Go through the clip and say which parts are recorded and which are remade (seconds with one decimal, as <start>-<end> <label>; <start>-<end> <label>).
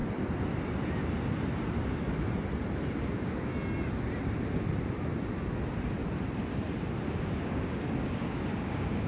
0.0-3.1 recorded; 3.1-3.5 remade; 3.5-7.2 recorded; 7.2-9.1 remade